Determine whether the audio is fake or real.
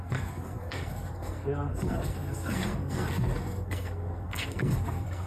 fake